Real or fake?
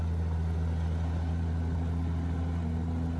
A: real